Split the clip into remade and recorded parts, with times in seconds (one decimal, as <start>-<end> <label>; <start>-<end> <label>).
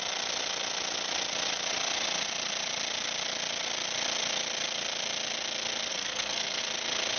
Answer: 0.0-5.9 recorded; 5.9-6.6 remade; 6.6-7.2 recorded